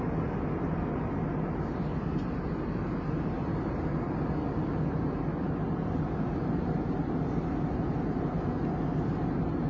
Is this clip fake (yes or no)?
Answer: no